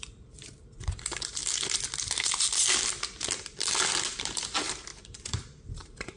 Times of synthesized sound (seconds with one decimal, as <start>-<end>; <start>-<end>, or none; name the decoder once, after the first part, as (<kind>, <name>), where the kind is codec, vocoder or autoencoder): 0.0-1.4 (vocoder, BigVGAN v2); 4.1-6.2